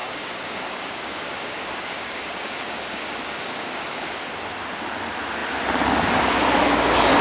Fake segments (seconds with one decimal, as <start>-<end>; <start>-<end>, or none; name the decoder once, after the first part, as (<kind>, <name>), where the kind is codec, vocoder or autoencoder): 0.0-4.1 (codec, DAC)